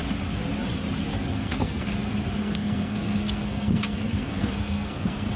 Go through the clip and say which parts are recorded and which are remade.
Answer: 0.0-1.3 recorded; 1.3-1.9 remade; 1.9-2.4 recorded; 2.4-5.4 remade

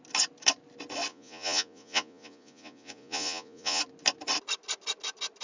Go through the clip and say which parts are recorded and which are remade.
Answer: 0.0-1.1 recorded; 1.1-3.8 remade; 3.8-5.4 recorded

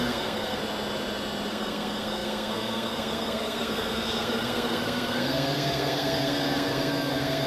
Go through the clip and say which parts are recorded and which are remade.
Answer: 0.0-0.6 remade; 0.6-1.5 recorded; 1.5-7.5 remade

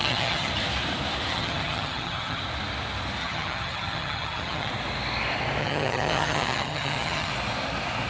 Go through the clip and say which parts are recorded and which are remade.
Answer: 0.0-0.5 remade; 0.5-1.3 recorded; 1.3-2.4 remade; 2.4-3.2 recorded; 3.2-4.7 remade; 4.7-5.6 recorded; 5.6-7.3 remade; 7.3-8.1 recorded

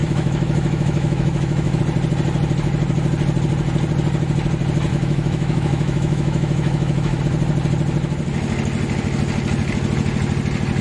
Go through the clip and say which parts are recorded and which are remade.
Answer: 0.0-1.8 remade; 1.8-4.9 recorded; 4.9-7.2 remade; 7.2-10.8 recorded